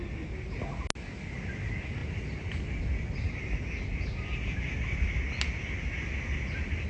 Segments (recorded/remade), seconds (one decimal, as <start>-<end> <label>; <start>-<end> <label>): 0.0-6.9 recorded